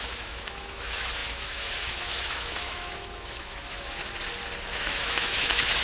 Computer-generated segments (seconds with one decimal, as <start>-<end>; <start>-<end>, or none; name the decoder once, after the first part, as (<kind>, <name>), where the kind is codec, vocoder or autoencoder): 0.0-4.0 (autoencoder, DAC-VAE); 4.7-5.8